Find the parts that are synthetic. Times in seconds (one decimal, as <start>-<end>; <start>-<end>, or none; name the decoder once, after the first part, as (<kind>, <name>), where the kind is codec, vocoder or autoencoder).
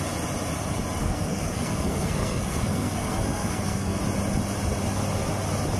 1.0-4.0 (codec, SNAC)